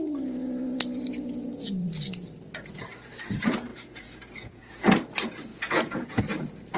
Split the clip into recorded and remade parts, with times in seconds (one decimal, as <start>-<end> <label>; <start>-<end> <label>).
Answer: 0.0-3.7 recorded; 3.7-4.7 remade; 4.7-5.5 recorded; 5.5-6.2 remade; 6.2-6.8 recorded